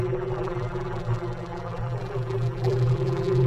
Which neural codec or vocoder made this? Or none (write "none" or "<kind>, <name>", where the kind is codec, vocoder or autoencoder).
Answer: vocoder, BigVGAN v2